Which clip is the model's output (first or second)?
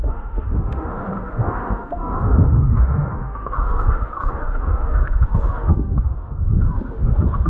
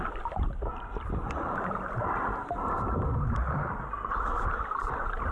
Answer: first